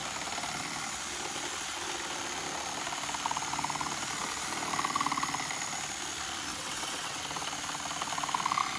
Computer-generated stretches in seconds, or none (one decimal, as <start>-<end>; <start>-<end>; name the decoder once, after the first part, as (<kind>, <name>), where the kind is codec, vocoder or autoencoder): 6.5-7.2 (vocoder, WaveNeXt)